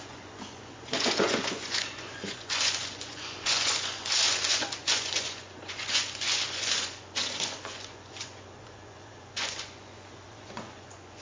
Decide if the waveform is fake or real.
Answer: fake